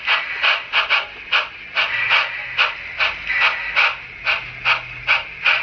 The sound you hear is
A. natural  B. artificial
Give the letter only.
A